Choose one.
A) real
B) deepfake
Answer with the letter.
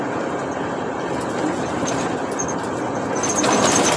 A